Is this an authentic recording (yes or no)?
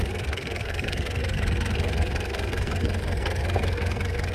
no